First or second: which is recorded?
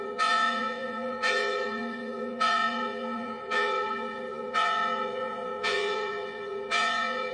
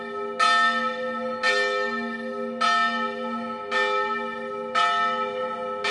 second